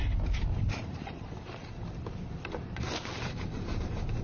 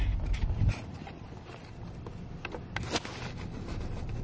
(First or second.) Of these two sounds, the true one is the second